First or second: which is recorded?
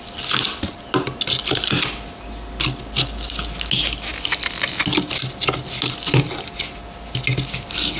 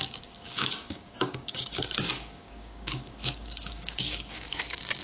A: first